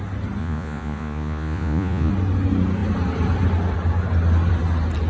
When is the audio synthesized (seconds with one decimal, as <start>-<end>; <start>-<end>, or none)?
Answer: 0.4-2.1